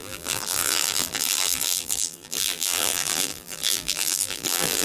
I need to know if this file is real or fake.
fake